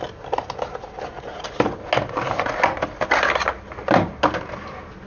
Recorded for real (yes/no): yes